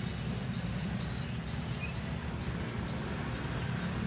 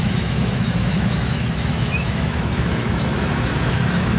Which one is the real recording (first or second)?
first